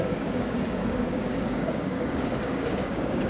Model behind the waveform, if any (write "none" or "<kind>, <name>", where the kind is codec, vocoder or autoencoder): codec, DAC